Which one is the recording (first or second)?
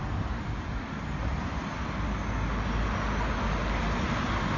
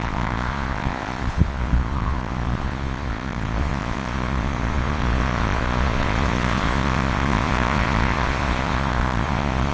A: first